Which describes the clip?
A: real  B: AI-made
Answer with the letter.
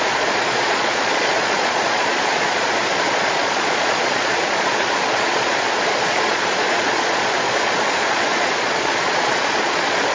B